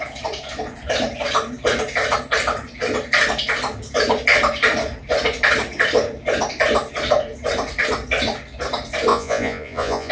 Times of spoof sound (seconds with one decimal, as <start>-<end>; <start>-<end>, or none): 9.1-10.1